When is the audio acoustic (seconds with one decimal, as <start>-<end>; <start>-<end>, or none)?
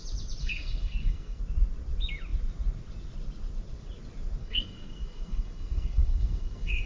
0.0-0.4; 1.4-4.4